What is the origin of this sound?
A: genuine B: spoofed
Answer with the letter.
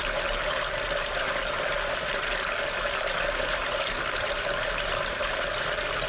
B